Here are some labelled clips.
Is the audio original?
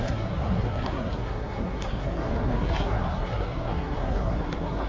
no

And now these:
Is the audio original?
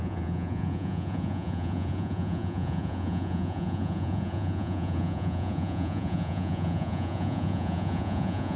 no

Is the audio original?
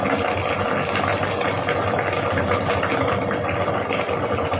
yes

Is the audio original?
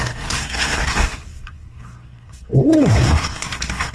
no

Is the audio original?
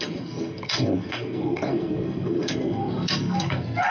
no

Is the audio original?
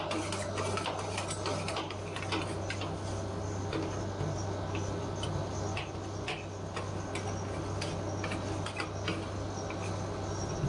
yes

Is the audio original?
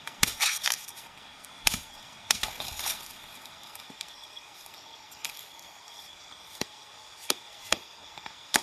no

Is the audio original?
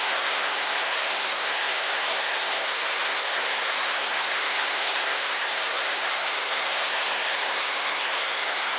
no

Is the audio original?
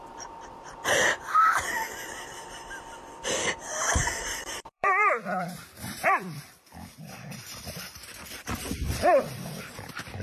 no